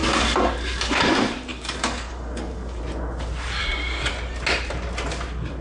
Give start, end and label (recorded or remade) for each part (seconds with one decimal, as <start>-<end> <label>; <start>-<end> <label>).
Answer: 0.0-1.0 remade; 1.0-1.5 recorded; 1.5-2.8 remade; 2.8-3.6 recorded; 3.6-4.1 remade; 4.1-5.6 recorded